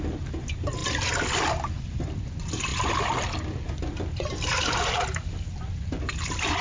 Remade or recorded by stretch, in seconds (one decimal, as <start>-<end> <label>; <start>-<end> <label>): 0.0-6.6 recorded